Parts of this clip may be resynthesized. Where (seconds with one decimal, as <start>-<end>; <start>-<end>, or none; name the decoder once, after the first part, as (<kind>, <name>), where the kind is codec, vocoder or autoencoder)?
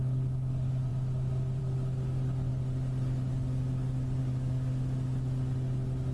none